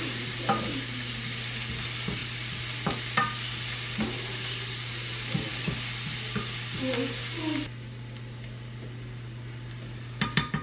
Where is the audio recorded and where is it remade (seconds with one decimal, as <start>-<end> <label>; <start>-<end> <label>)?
0.0-10.6 recorded